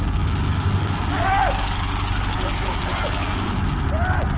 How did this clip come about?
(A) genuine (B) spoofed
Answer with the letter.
A